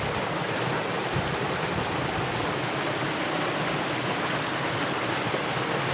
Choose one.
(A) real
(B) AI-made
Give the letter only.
A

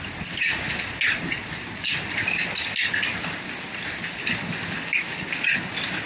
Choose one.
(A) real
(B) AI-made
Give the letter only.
A